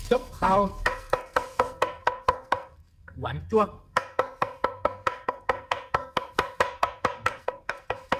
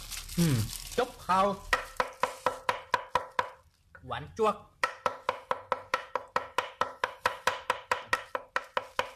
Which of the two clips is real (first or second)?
second